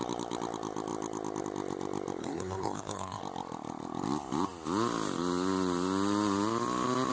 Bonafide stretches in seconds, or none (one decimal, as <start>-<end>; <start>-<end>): 0.0-2.2; 3.2-7.1